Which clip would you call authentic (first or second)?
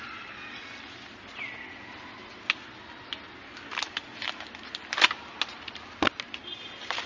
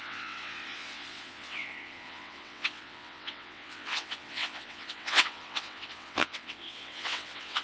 first